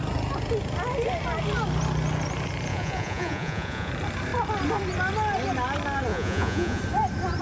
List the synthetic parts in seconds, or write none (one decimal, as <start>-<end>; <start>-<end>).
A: 2.7-3.9; 6.1-6.8